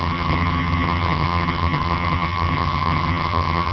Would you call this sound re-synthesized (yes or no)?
yes